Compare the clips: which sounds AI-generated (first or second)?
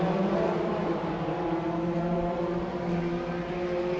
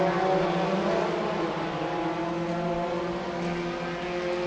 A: first